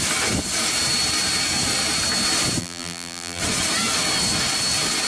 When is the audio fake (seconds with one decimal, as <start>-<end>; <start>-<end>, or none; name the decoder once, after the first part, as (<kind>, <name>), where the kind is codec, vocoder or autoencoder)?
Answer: 2.6-3.4 (vocoder, BigVGAN v2)